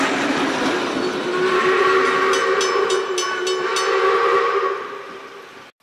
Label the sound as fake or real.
real